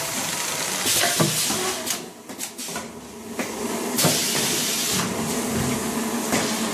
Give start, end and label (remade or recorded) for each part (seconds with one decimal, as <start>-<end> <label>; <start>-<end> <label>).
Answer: 0.0-6.7 recorded